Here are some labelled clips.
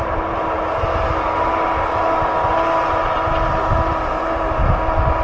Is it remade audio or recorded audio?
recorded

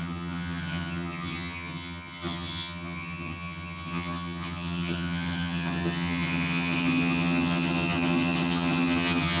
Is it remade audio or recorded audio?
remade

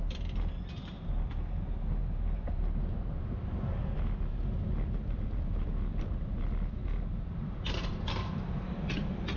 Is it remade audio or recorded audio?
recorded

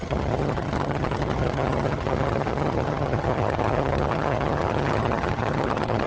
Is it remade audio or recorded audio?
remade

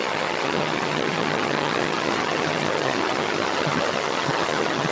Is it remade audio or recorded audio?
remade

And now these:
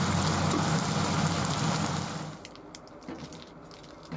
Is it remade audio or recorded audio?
recorded